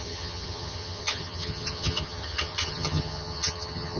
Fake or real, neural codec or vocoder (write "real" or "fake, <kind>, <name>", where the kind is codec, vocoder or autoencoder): fake, vocoder, HiFi-GAN